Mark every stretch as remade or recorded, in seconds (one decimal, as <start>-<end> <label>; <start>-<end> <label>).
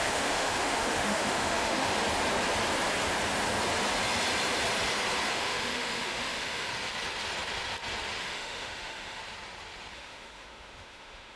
0.0-2.0 remade; 2.0-5.3 recorded; 5.3-6.7 remade; 6.7-8.2 recorded; 8.2-9.2 remade; 9.2-9.9 recorded; 9.9-11.4 remade